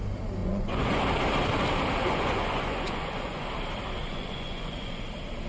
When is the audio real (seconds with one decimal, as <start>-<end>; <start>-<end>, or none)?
0.0-0.4; 1.0-2.0; 3.5-4.1; 5.0-5.5